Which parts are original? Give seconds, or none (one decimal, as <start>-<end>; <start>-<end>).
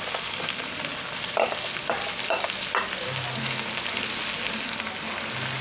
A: 0.0-0.9; 4.2-5.6